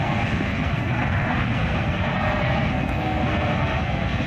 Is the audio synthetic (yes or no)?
yes